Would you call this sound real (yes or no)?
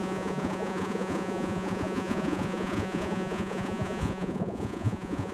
no